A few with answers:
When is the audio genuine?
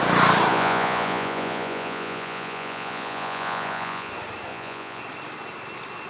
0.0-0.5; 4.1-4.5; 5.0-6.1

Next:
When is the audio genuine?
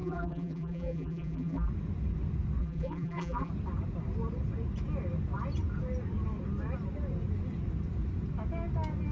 1.7-2.6; 3.5-9.1